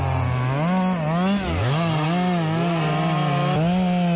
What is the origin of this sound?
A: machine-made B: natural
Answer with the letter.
B